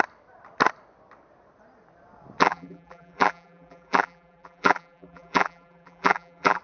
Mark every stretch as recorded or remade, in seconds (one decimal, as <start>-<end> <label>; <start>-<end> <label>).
0.0-2.4 recorded; 2.4-6.6 remade